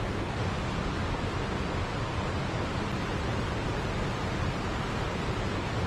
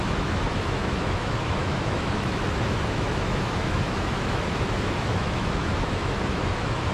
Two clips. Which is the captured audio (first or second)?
first